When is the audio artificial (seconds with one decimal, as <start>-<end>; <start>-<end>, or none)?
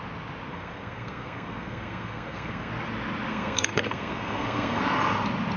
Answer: 0.5-2.7; 3.3-4.8